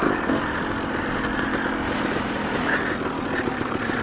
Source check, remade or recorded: recorded